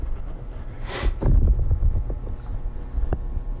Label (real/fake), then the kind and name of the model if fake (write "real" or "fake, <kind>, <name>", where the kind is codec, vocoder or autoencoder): real